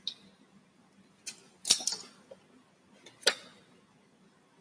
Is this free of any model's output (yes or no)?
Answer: yes